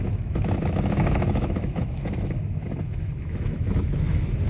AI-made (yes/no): yes